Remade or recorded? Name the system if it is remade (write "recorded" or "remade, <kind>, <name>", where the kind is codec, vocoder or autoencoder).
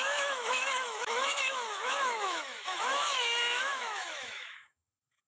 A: remade, autoencoder, DAC-VAE